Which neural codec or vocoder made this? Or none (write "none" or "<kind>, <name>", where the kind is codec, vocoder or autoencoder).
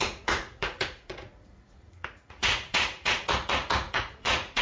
vocoder, Vocos